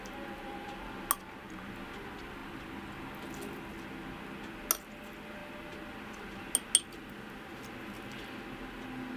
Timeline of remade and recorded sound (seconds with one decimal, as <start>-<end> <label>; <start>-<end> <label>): 0.0-9.2 recorded